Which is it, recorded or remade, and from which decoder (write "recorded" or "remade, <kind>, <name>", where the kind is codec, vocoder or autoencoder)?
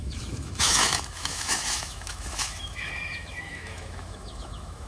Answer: remade, autoencoder, DAC-VAE